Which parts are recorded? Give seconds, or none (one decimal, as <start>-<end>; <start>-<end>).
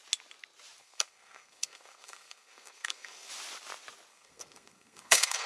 0.0-0.8; 3.3-4.1